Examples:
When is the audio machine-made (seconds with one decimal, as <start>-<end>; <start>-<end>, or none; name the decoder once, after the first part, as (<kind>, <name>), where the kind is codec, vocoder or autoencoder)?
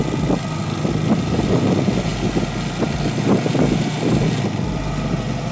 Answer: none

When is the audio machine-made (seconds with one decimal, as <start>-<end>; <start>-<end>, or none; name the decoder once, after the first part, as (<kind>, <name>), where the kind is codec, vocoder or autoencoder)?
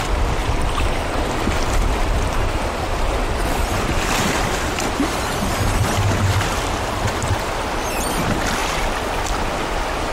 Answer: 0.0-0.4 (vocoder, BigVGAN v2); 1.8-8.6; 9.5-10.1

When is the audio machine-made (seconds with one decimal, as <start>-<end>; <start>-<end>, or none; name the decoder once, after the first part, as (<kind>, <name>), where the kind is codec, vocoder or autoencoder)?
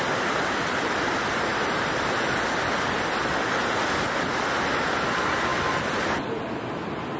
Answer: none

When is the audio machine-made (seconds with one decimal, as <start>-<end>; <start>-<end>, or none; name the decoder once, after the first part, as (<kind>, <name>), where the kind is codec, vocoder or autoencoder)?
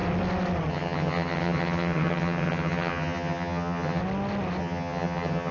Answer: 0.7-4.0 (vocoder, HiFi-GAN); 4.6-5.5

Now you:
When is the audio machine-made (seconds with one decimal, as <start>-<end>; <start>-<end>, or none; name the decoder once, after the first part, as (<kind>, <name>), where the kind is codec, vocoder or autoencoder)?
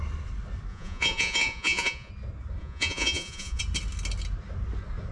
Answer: 0.7-2.1 (vocoder, Vocos); 2.6-3.6